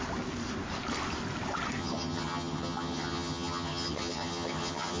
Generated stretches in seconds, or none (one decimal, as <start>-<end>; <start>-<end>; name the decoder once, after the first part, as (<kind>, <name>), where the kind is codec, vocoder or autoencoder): 1.8-5.0 (vocoder, HiFi-GAN)